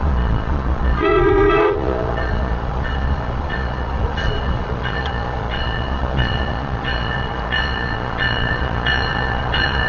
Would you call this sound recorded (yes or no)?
no